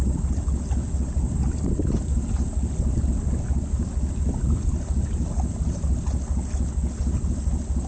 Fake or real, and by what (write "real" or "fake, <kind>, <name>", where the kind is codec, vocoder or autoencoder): real